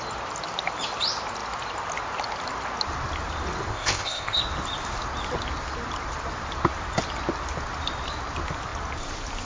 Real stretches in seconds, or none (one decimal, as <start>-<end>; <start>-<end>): 0.0-3.7; 4.4-9.5